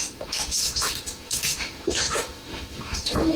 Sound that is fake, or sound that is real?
fake